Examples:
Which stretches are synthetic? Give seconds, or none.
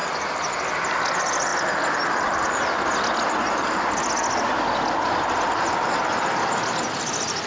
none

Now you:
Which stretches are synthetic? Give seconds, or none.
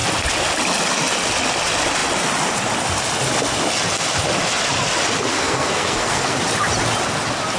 5.3-6.4 (codec, SNAC)